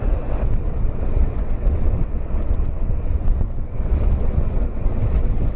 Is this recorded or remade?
remade